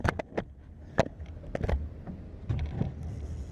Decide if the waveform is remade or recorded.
recorded